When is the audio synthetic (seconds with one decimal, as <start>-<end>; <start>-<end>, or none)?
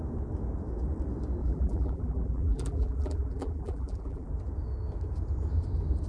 1.4-4.3